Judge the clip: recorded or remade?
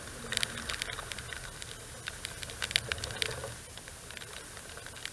recorded